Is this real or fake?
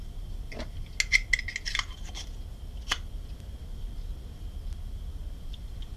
real